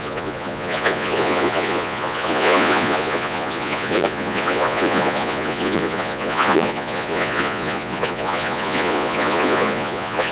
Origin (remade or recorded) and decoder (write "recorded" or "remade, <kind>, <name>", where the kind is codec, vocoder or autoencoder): remade, vocoder, Vocos